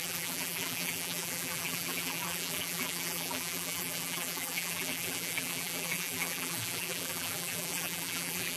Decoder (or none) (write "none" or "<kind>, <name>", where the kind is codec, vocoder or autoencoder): vocoder, BigVGAN v2